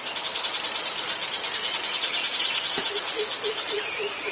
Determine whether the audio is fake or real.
fake